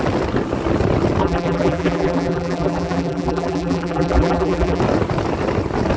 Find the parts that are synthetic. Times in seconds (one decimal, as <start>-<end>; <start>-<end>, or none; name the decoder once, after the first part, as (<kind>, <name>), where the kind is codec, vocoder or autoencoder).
1.2-4.8 (vocoder, BigVGAN v2)